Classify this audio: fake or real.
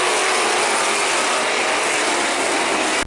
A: real